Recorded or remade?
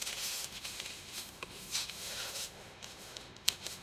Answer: remade